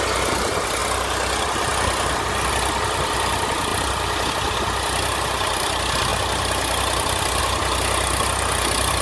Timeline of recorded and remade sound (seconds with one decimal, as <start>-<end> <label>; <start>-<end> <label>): 0.0-9.0 recorded